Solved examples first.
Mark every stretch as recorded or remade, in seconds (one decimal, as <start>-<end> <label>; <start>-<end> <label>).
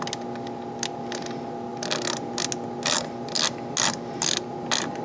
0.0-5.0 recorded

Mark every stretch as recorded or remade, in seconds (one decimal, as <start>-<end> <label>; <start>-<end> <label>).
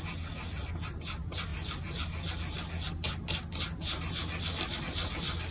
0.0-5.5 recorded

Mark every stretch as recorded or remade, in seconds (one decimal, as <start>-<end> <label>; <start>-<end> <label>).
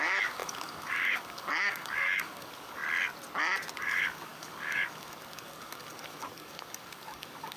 0.0-2.8 remade; 2.8-3.8 recorded; 3.8-7.6 remade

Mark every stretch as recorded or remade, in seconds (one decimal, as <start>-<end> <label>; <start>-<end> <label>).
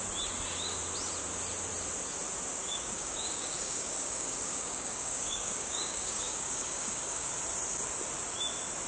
0.0-2.6 recorded; 2.6-7.3 remade; 7.3-8.9 recorded